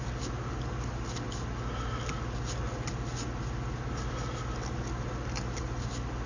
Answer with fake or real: real